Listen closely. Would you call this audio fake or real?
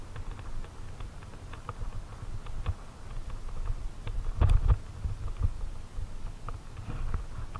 real